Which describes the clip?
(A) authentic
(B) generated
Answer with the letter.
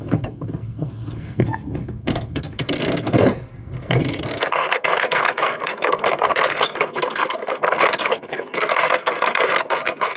B